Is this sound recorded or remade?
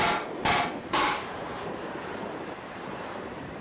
remade